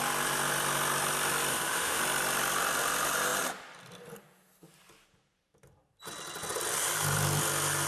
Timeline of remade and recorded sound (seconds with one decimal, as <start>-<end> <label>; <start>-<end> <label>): 0.0-1.5 recorded; 1.5-2.0 remade; 2.0-7.9 recorded

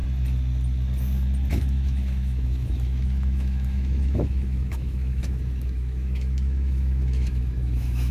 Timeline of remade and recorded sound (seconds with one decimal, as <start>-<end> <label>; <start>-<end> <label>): 0.0-1.5 recorded; 1.5-8.1 remade

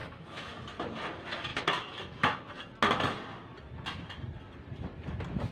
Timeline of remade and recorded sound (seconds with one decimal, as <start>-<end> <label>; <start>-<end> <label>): 0.0-0.5 remade; 0.5-1.5 recorded; 1.5-2.5 remade; 2.5-5.5 recorded

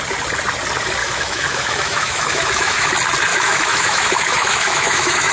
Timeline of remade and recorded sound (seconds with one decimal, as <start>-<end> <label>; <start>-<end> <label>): 0.0-1.0 recorded; 1.0-2.9 remade; 2.9-3.3 recorded; 3.3-5.3 remade

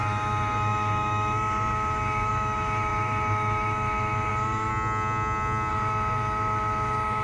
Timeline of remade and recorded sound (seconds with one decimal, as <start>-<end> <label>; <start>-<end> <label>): 0.0-4.7 remade; 4.7-5.7 recorded; 5.7-7.2 remade

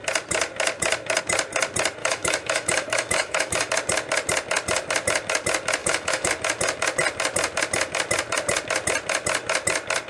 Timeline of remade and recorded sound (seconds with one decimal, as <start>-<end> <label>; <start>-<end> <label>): 0.0-2.0 recorded; 2.0-3.7 remade; 3.7-5.8 recorded; 5.8-6.3 remade; 6.3-10.1 recorded

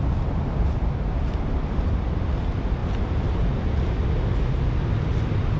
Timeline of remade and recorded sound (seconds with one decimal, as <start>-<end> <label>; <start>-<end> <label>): 0.0-5.6 recorded